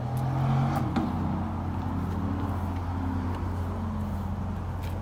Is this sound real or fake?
real